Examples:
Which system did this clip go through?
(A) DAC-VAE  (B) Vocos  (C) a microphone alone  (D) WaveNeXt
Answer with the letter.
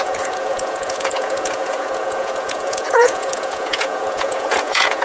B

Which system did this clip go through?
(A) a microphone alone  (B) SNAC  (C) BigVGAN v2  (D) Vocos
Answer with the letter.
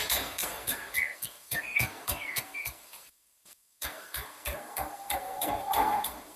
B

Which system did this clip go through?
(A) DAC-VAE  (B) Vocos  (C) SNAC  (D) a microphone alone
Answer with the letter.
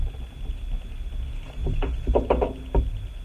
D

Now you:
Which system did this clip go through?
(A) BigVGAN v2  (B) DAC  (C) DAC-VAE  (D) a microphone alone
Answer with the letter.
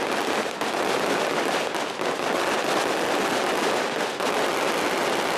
D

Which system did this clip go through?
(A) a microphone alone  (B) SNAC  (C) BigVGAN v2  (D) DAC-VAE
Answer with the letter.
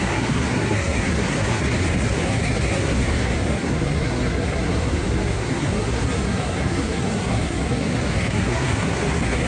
B